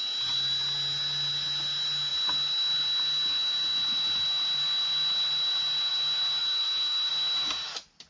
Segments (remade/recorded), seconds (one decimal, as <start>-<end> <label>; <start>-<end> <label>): 0.0-6.4 recorded; 6.4-7.1 remade; 7.1-8.1 recorded